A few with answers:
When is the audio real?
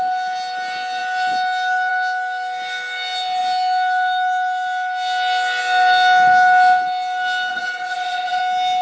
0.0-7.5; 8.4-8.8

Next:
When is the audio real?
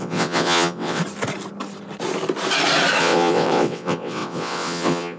1.0-3.0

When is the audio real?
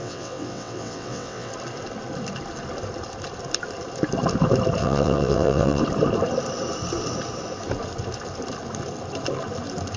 1.5-4.8; 5.8-10.0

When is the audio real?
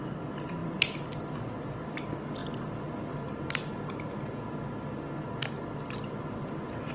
0.0-6.9